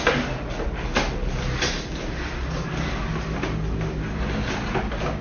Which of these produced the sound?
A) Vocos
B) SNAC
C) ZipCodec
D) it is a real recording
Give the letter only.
D